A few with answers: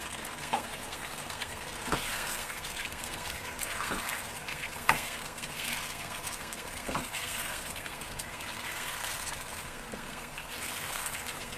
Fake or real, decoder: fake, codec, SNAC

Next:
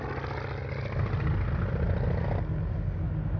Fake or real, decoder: real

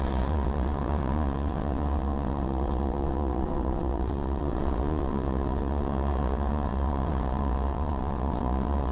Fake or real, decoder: fake, vocoder, WaveNeXt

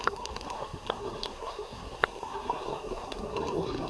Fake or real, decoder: fake, codec, SNAC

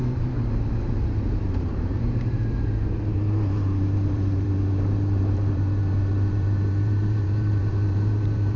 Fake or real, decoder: fake, vocoder, BigVGAN v2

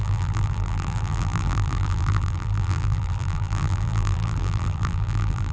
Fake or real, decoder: fake, vocoder, BigVGAN v2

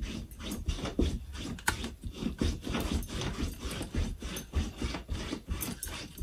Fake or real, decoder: real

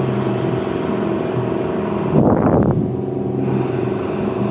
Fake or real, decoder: real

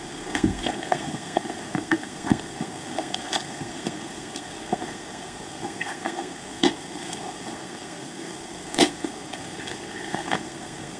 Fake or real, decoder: fake, codec, SNAC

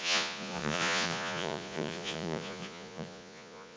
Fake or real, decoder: fake, vocoder, Vocos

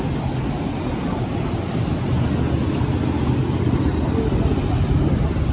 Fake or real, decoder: real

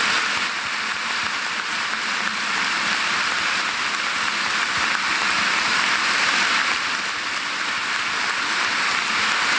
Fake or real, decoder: real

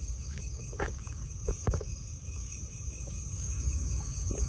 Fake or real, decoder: fake, codec, DAC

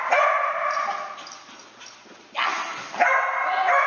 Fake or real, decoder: real